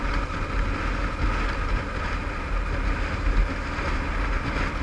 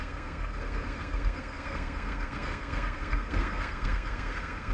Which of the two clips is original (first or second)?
first